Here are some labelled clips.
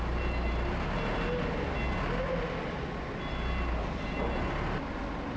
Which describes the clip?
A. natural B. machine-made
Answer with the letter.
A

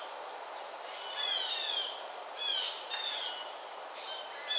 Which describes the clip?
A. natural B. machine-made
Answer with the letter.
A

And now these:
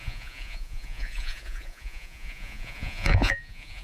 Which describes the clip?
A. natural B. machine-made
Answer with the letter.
B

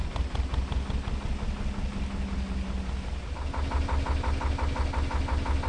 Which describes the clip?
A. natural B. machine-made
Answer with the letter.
A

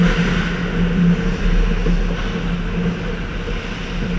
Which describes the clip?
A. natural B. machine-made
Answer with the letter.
A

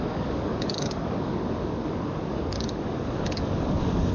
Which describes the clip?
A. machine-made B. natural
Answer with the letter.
A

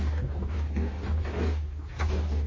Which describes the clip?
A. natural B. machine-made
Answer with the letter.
B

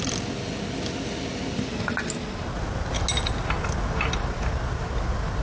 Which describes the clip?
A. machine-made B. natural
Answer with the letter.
B